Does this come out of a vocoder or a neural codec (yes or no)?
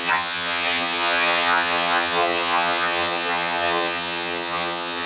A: yes